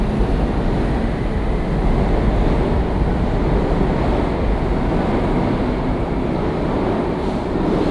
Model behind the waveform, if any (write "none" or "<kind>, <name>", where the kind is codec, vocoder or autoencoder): none